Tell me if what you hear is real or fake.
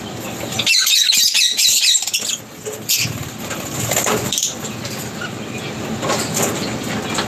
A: real